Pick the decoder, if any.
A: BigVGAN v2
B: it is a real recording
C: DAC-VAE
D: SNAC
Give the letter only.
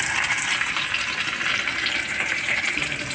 A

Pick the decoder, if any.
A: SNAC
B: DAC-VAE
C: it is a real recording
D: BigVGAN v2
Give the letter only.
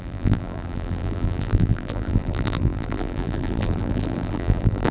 D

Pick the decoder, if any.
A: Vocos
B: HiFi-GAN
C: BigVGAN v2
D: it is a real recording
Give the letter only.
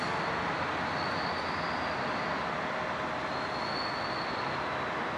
D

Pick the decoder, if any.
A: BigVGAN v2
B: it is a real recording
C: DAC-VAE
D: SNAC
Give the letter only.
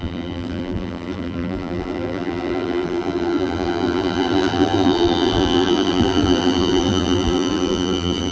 A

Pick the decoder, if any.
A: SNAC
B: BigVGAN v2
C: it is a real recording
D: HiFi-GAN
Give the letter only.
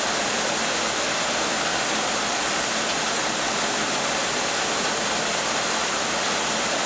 B